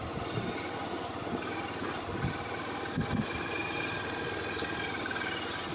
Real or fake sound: real